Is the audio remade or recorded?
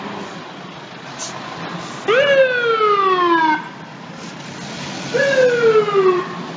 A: recorded